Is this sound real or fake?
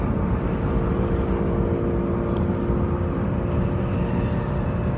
real